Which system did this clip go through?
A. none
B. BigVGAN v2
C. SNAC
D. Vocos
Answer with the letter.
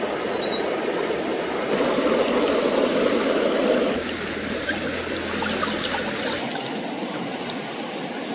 A